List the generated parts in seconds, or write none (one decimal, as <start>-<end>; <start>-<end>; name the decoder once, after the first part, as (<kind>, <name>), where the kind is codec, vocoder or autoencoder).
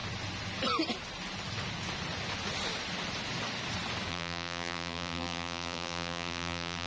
4.1-6.9 (vocoder, BigVGAN v2)